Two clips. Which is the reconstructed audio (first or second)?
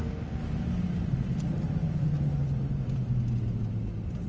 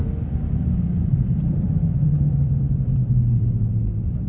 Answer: second